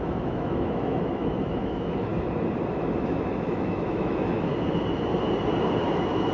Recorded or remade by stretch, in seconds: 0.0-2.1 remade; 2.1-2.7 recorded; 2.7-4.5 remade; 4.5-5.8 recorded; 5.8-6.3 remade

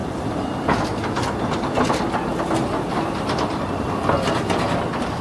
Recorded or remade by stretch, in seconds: 0.0-5.2 recorded